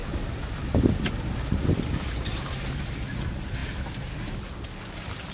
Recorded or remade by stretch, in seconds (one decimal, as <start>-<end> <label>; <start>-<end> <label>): 0.0-3.2 recorded; 3.2-3.6 remade; 3.6-5.3 recorded